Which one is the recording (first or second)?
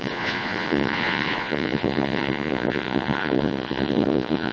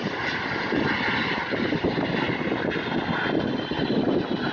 second